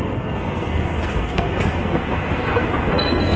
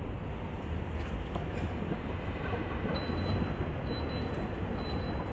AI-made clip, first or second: first